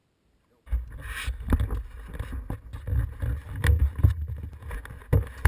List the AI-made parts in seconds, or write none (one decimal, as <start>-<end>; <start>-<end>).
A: none